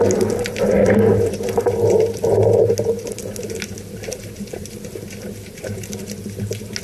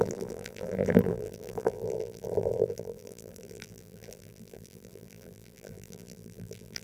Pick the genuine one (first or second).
first